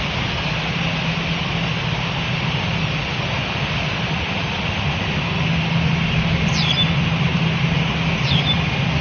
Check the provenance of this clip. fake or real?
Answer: real